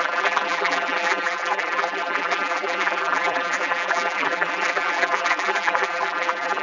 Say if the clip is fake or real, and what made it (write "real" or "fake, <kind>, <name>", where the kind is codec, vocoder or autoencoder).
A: fake, vocoder, BigVGAN v2